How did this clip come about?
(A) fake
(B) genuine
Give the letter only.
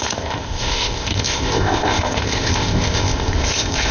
A